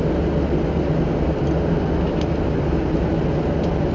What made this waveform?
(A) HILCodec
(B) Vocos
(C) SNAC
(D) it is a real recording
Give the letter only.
D